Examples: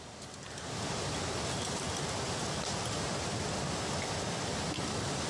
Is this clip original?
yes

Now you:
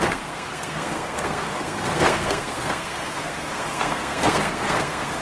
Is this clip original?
no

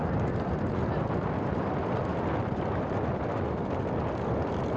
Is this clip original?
yes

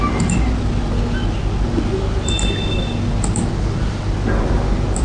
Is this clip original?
yes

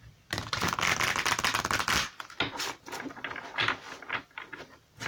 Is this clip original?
yes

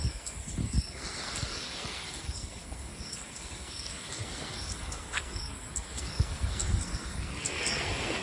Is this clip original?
no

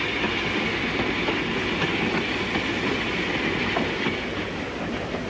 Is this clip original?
yes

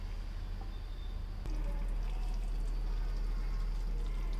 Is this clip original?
yes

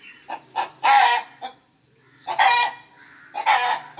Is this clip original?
yes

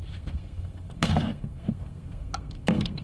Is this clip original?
no